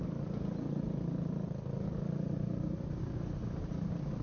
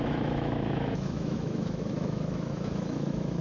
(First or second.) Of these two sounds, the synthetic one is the second